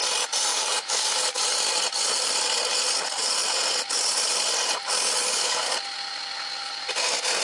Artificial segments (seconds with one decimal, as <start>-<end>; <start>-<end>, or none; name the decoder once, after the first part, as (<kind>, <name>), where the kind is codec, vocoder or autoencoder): 0.5-1.4 (codec, DAC); 5.2-5.7